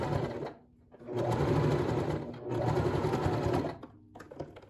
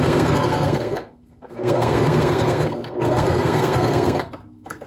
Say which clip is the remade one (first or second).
second